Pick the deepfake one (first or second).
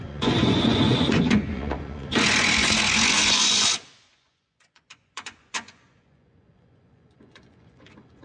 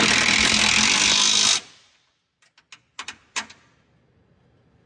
first